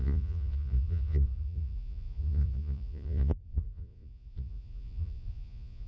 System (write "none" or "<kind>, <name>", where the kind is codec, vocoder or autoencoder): vocoder, Vocos